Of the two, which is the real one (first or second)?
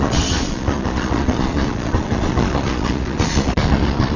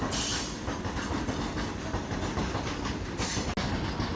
second